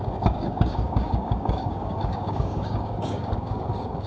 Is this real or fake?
fake